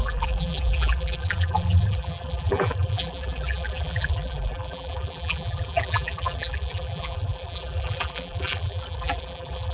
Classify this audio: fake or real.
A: fake